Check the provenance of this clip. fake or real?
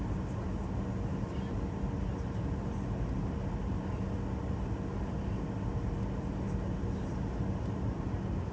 real